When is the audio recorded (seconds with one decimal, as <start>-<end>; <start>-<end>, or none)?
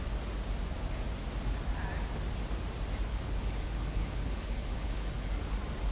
0.0-3.1; 5.3-5.9